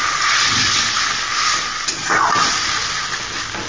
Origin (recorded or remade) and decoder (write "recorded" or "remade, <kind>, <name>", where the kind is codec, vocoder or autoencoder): recorded